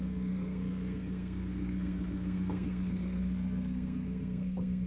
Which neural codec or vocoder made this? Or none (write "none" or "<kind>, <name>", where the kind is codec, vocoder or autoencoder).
codec, SNAC